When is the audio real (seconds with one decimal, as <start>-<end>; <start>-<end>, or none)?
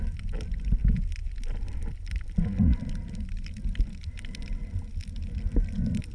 0.0-6.1